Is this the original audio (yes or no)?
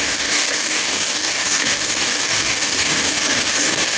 no